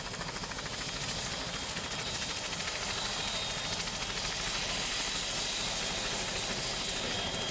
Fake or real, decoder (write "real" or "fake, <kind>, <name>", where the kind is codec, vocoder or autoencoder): real